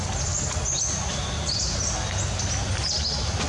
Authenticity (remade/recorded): recorded